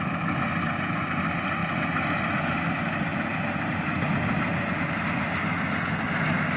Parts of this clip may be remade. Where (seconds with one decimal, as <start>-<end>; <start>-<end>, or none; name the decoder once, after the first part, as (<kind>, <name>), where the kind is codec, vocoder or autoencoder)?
none